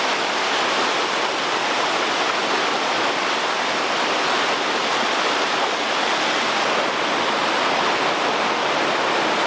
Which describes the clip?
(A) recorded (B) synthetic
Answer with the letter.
A